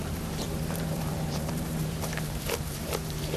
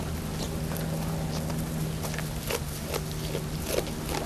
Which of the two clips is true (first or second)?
second